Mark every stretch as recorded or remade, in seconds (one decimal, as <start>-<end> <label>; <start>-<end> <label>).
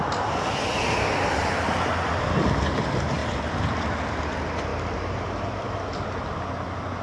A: 0.0-7.0 recorded